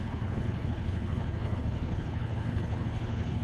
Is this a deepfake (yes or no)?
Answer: yes